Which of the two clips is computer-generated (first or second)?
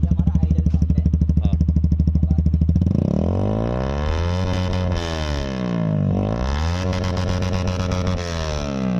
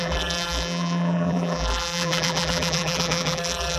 second